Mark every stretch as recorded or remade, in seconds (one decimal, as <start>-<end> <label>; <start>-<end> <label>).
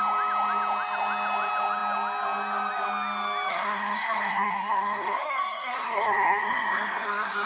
0.0-3.5 recorded; 3.5-7.5 remade